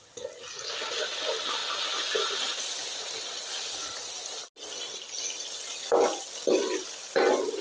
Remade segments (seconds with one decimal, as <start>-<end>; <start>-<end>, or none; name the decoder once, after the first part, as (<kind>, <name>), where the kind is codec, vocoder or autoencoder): none